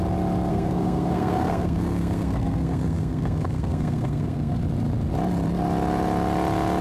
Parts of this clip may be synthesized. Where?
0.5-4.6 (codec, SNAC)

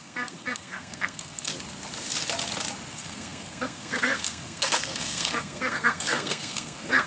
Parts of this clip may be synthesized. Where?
0.0-1.5 (codec, SNAC); 2.9-7.1

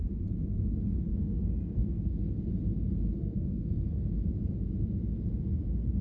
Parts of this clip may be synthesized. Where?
1.1-2.3 (codec, SNAC); 3.2-4.1

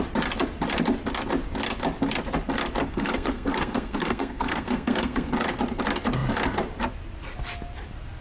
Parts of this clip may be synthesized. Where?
2.8-5.3 (codec, SNAC)